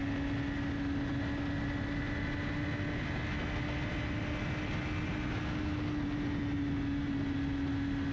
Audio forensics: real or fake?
real